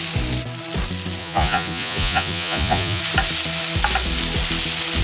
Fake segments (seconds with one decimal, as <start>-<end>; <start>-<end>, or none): 1.2-3.0